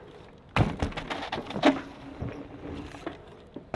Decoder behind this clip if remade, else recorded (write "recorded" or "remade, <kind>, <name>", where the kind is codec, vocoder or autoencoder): recorded